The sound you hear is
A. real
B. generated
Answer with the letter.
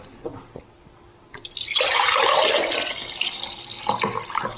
A